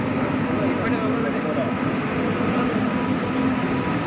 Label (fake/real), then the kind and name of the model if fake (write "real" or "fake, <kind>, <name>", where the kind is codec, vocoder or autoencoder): real